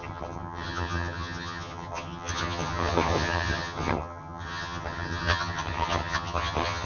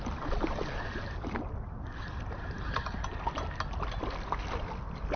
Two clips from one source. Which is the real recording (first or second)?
second